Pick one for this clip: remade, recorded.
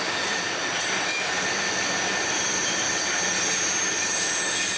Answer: recorded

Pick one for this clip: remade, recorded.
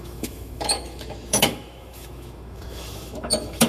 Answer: remade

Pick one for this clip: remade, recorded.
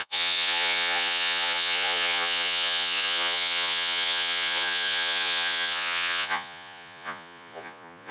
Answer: remade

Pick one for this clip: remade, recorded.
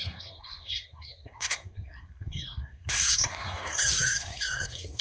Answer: remade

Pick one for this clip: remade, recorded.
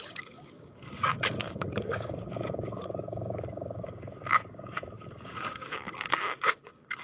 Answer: remade